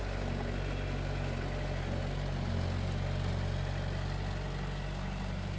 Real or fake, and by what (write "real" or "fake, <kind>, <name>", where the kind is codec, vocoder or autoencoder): real